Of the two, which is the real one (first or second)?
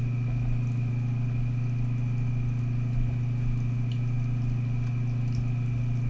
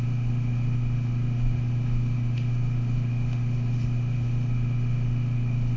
first